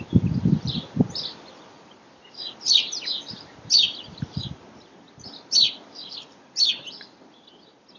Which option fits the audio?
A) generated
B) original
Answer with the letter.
B